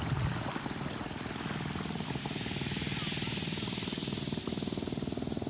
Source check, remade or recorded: recorded